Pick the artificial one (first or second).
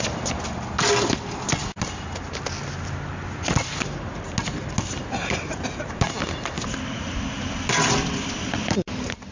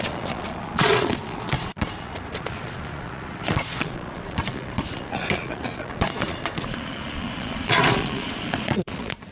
second